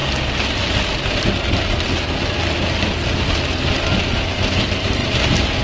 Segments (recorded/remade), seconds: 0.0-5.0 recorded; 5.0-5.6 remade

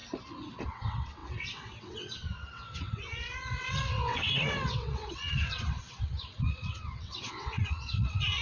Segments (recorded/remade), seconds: 0.0-0.6 recorded; 0.6-8.4 remade

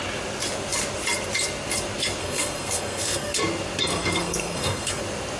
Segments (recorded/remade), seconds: 0.0-2.2 recorded; 2.2-3.4 remade; 3.4-3.9 recorded; 3.9-5.0 remade; 5.0-5.4 recorded

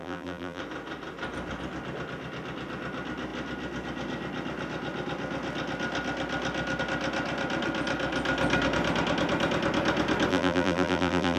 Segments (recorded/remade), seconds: 0.0-0.6 remade; 0.6-10.3 recorded; 10.3-11.4 remade

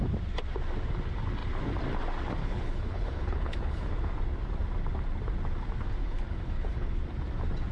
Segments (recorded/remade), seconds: 0.0-2.4 recorded; 2.4-4.1 remade; 4.1-6.0 recorded; 6.0-7.0 remade; 7.0-7.7 recorded

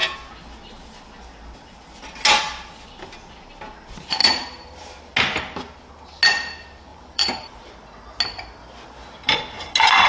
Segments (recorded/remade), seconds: 0.0-4.2 recorded; 4.2-5.1 remade; 5.1-6.9 recorded; 6.9-7.7 remade; 7.7-10.1 recorded

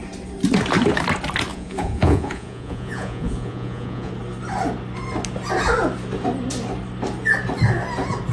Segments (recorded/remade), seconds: 0.0-1.5 recorded; 1.5-4.1 remade; 4.1-8.3 recorded